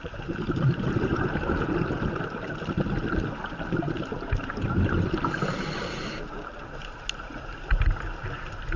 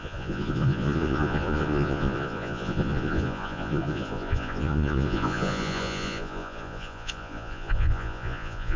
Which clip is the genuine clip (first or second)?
first